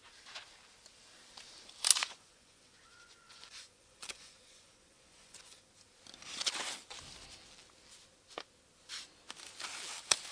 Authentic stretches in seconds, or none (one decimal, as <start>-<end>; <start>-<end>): 0.0-2.0; 5.7-10.3